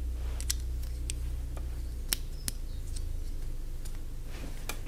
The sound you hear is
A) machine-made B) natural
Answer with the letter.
B